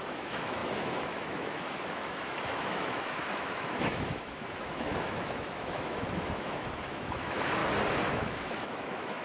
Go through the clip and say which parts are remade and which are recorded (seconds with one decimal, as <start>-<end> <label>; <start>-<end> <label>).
0.0-7.6 remade; 7.6-8.1 recorded; 8.1-9.2 remade